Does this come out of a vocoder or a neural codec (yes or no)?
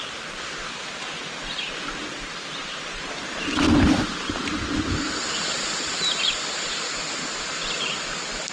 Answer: yes